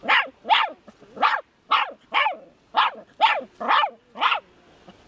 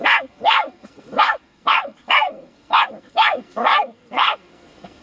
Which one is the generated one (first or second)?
second